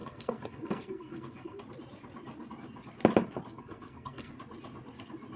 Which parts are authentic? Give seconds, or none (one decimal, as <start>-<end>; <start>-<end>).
1.6-3.5; 4.3-5.4